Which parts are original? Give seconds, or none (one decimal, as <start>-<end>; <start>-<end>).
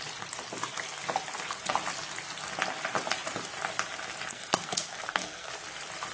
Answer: 0.0-4.3; 5.5-6.1